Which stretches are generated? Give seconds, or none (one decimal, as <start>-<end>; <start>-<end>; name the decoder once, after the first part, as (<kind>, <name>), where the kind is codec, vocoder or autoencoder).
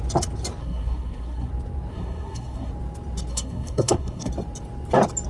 0.6-1.5 (codec, SNAC); 1.9-2.7; 3.3-4.3